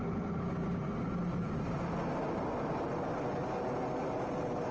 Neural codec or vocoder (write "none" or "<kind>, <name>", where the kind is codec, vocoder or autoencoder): none